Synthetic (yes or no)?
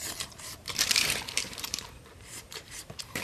yes